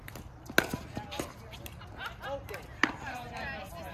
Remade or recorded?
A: recorded